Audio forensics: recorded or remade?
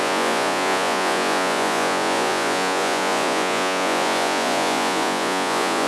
remade